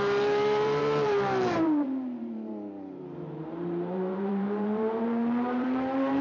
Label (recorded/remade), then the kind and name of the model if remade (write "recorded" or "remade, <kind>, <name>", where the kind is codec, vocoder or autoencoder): remade, vocoder, BigVGAN v2